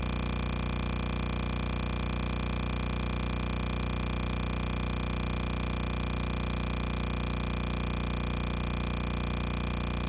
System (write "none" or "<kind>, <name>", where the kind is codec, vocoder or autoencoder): none